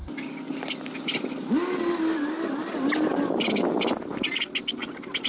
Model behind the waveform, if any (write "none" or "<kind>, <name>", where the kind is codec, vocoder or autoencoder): none